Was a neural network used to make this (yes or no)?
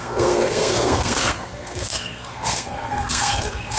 yes